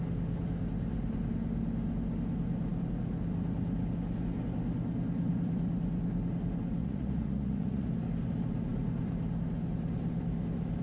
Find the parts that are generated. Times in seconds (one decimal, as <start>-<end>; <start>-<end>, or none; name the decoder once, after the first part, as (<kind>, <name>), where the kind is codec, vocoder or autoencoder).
6.8-7.9 (vocoder, Vocos)